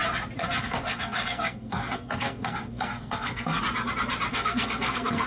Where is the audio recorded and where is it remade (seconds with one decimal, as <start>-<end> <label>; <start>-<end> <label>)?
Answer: 0.0-0.4 recorded; 0.4-3.6 remade; 3.6-4.3 recorded; 4.3-5.3 remade